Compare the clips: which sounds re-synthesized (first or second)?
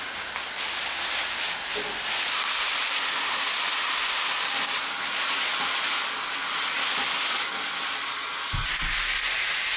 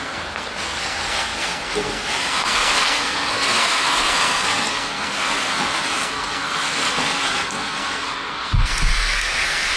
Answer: second